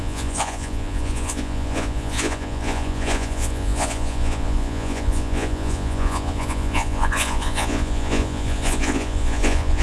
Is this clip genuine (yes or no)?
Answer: no